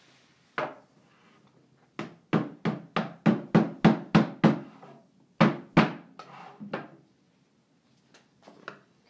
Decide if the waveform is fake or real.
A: real